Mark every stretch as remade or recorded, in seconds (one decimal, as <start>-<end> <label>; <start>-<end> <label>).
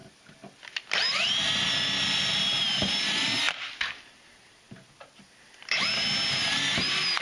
0.0-7.2 recorded